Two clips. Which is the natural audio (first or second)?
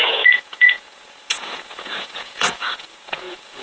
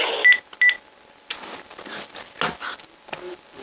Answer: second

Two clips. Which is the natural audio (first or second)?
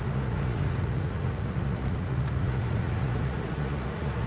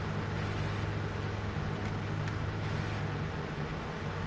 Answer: second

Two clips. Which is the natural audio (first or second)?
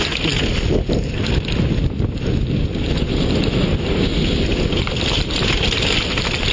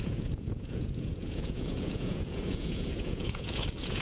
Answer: first